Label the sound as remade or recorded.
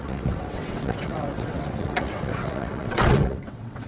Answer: remade